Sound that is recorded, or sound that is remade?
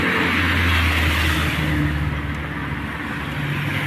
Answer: recorded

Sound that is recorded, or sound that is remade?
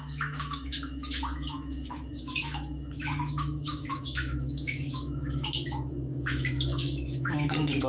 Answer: remade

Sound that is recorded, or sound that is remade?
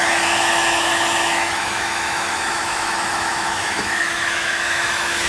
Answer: remade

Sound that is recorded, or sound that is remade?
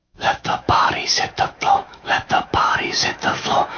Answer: remade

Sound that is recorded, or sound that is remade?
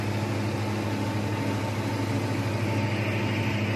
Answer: recorded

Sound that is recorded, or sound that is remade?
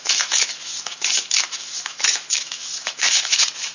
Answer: remade